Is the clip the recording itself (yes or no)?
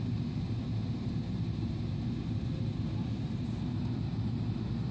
no